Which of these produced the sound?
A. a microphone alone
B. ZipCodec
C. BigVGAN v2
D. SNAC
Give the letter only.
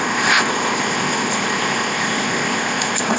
B